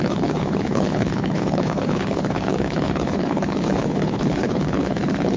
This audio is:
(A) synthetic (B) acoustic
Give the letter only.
A